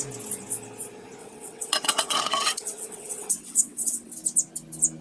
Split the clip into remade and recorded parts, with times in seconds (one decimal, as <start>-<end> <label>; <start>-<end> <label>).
0.0-1.2 recorded; 1.2-4.1 remade; 4.1-5.0 recorded